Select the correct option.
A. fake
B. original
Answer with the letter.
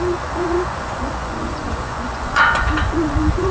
A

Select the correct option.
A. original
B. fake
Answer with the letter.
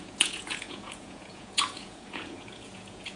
B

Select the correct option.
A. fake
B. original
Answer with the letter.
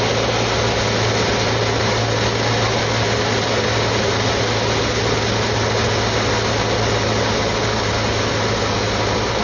B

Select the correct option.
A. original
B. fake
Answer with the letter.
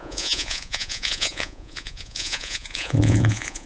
B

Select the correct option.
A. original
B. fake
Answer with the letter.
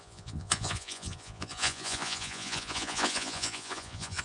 B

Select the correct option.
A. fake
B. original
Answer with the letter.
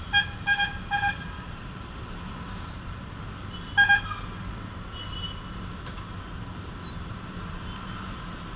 B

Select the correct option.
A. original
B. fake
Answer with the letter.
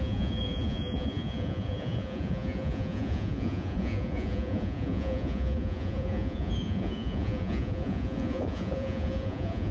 B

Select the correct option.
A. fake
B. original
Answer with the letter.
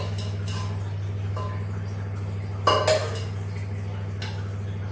B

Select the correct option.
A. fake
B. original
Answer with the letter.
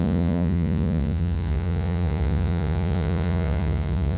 A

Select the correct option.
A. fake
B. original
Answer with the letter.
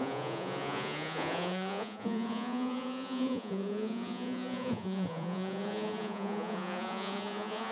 A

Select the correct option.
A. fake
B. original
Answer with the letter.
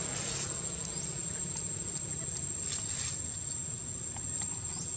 B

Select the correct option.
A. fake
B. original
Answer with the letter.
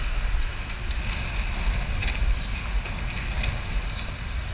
B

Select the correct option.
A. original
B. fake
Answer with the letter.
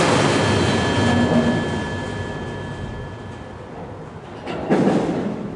A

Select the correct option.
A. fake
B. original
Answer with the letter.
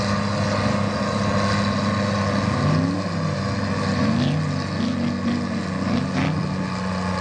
B